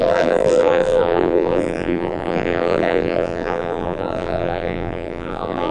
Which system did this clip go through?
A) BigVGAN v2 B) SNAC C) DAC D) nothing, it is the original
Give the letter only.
A